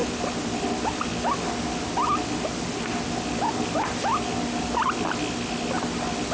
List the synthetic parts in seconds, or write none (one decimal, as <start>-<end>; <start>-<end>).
none